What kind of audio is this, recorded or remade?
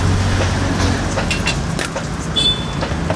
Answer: recorded